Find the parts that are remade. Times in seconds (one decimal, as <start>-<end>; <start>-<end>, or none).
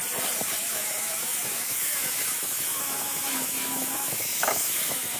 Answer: 0.6-5.2